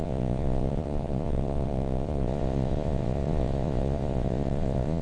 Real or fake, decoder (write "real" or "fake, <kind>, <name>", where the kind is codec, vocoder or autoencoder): fake, vocoder, Vocos